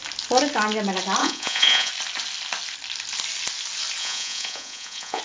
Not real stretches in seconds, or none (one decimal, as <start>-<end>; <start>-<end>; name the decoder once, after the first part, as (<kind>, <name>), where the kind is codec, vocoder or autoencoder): 1.2-1.9 (vocoder, Vocos); 4.0-5.2